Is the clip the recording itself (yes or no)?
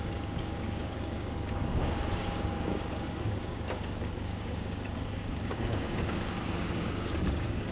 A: no